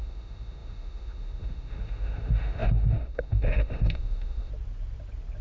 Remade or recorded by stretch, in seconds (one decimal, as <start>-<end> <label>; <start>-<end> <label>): 0.0-4.5 remade; 4.5-5.4 recorded